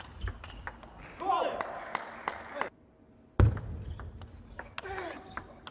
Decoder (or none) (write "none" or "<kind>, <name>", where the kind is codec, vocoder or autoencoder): none